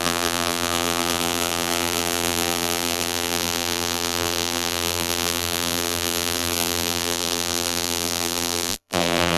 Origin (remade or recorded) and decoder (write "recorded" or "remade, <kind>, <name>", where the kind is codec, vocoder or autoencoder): remade, vocoder, BigVGAN v2